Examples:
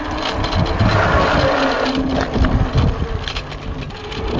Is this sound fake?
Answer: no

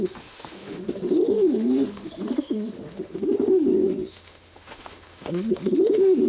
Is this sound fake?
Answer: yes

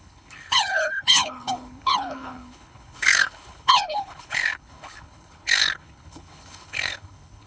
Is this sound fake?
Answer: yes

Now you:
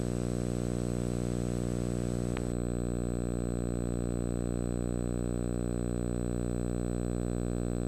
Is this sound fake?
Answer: no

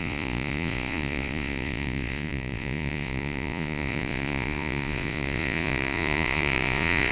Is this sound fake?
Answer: yes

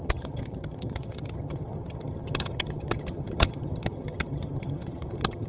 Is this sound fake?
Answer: yes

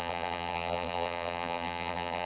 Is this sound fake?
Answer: yes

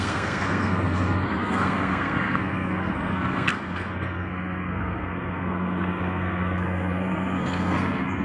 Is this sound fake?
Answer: yes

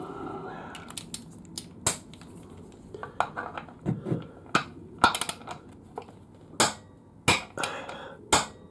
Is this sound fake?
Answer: no